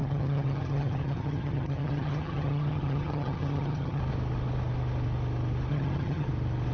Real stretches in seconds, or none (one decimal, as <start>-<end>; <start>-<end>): 4.0-5.7; 6.3-6.7